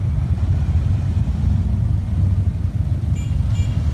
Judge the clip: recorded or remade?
recorded